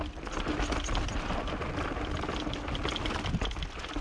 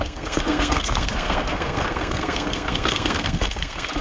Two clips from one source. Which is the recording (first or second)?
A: first